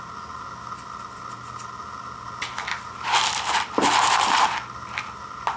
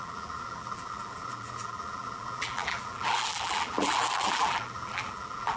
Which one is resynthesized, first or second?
second